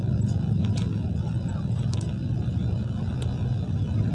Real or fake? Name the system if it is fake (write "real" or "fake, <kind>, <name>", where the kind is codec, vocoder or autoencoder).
real